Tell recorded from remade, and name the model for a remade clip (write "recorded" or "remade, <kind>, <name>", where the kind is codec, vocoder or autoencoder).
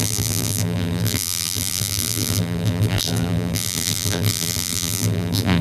remade, vocoder, BigVGAN v2